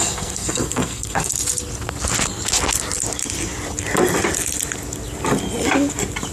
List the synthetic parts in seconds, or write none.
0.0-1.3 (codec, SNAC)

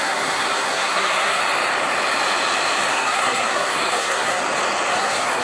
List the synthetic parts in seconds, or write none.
0.0-1.4 (codec, SNAC); 2.9-4.4; 4.9-5.4

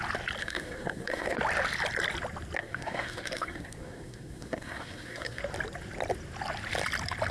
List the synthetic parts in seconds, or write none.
0.4-1.4 (codec, SNAC); 2.6-5.4